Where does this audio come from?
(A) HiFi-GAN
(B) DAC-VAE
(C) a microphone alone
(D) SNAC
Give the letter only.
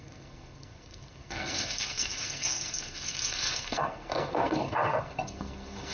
D